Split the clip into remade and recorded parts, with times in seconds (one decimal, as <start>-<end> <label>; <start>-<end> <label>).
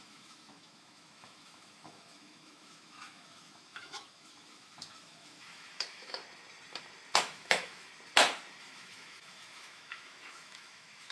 0.0-6.2 remade; 6.2-7.2 recorded; 7.2-7.9 remade; 7.9-8.6 recorded; 8.6-11.1 remade